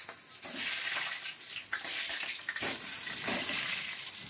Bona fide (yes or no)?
yes